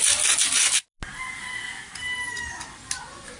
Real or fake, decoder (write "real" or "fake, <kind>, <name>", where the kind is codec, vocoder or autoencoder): real